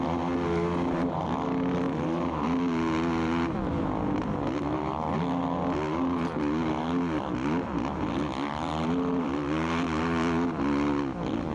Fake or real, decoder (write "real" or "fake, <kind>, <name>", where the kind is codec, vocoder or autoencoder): real